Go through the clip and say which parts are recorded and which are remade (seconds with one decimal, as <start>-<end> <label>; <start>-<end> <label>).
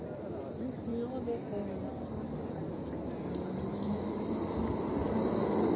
0.0-3.7 recorded; 3.7-4.3 remade; 4.3-5.8 recorded